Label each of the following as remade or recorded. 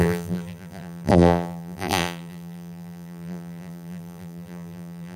remade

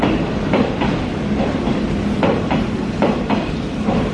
remade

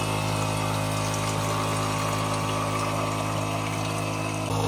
recorded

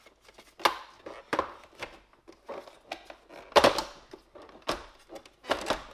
recorded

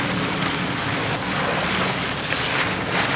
recorded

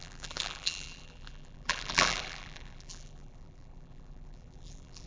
remade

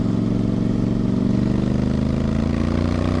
recorded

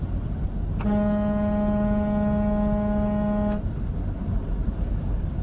recorded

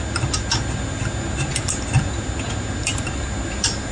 recorded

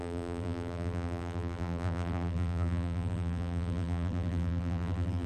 remade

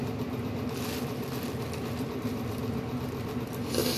recorded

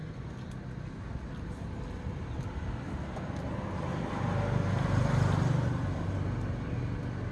recorded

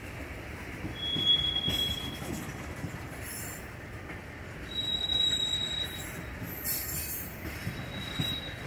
remade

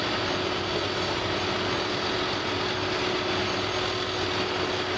recorded